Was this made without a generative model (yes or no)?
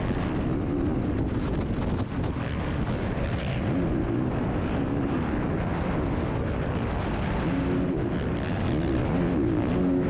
yes